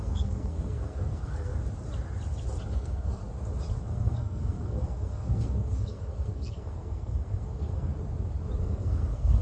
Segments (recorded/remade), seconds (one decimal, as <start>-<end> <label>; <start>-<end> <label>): 0.0-1.5 remade; 1.5-2.7 recorded; 2.7-3.2 remade; 3.2-3.8 recorded; 3.8-7.9 remade; 7.9-8.6 recorded; 8.6-9.4 remade